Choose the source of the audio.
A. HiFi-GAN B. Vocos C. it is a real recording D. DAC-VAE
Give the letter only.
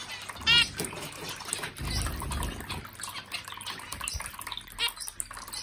C